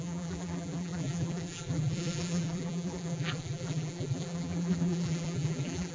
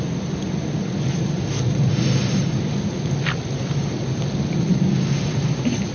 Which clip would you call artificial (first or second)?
first